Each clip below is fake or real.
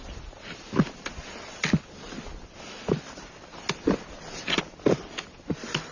real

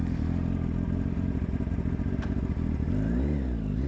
real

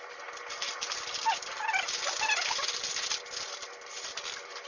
real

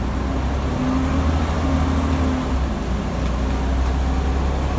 real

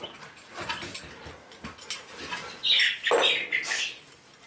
real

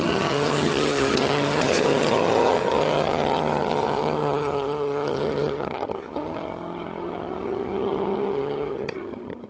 fake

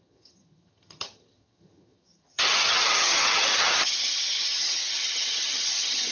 fake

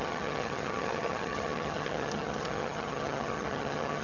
fake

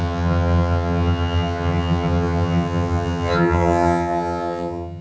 fake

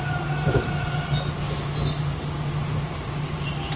real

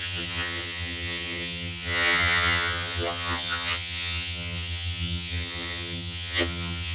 fake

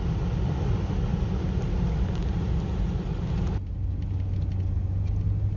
real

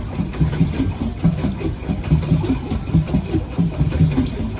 real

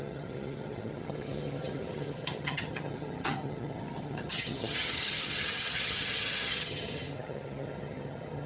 fake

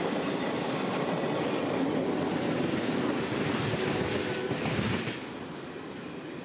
real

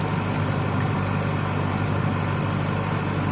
real